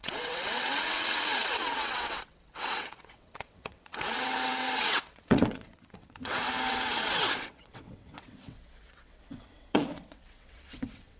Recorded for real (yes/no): no